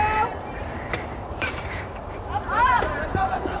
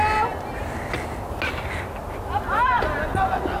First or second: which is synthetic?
first